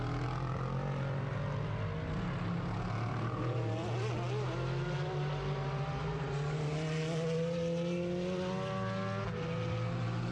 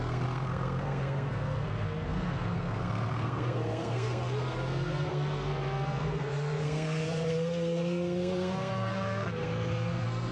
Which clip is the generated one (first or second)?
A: second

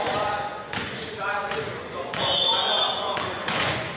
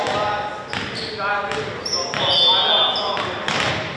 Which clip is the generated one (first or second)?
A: first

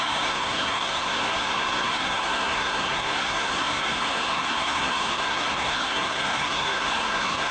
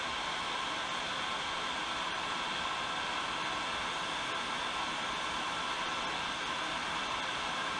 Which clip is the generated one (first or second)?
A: first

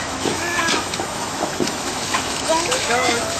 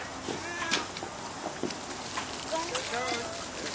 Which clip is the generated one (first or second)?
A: first